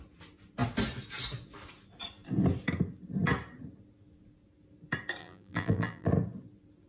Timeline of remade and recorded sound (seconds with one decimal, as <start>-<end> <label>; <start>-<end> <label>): 0.0-5.2 recorded; 5.2-6.1 remade; 6.1-6.9 recorded